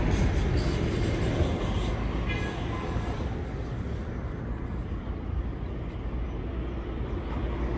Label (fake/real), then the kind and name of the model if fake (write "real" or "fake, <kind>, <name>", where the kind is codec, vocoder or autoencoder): real